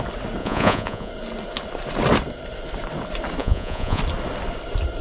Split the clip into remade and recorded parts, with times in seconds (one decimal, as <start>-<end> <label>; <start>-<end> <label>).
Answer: 0.0-0.4 recorded; 0.4-1.1 remade; 1.1-3.4 recorded; 3.4-4.0 remade; 4.0-5.0 recorded